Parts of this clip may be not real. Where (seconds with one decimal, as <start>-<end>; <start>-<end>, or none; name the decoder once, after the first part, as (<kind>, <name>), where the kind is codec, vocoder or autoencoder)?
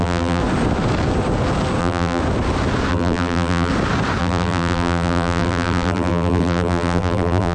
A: 0.0-0.4 (vocoder, BigVGAN v2); 1.8-2.2; 2.9-3.7; 4.2-7.5